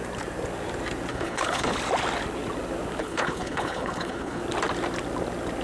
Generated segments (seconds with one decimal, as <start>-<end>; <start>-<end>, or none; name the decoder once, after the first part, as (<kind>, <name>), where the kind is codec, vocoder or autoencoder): 1.1-1.7 (codec, HILCodec); 3.0-4.4